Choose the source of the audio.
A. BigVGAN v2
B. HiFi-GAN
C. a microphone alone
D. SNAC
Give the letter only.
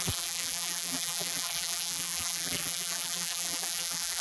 A